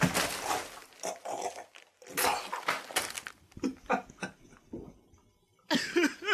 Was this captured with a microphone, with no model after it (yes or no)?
yes